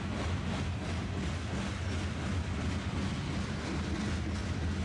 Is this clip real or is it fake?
real